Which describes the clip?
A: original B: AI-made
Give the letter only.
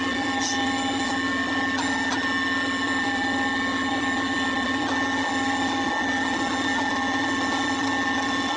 A